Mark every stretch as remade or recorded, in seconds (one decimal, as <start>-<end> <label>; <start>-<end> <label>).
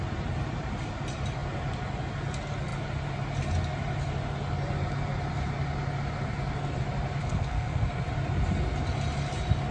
0.0-7.2 recorded; 7.2-8.0 remade; 8.0-9.7 recorded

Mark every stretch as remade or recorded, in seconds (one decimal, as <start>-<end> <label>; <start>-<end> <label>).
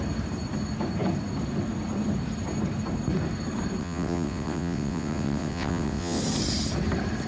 0.0-3.8 recorded; 3.8-6.2 remade; 6.2-7.3 recorded